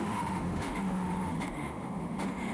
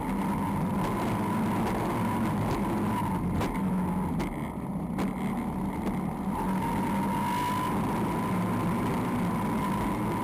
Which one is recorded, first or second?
second